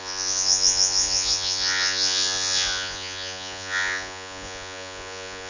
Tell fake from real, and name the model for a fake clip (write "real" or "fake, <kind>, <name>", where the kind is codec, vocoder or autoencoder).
fake, vocoder, Vocos